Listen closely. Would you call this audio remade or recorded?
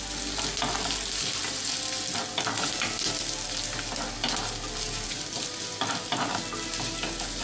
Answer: recorded